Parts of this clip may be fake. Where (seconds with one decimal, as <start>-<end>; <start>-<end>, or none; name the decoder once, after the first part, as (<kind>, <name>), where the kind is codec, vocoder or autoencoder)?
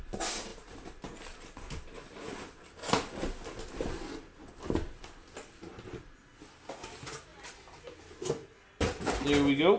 none